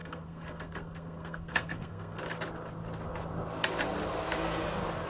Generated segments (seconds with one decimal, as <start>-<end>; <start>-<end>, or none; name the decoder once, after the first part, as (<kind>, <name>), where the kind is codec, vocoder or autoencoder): 0.0-2.2 (codec, SNAC)